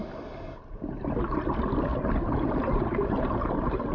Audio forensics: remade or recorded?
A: recorded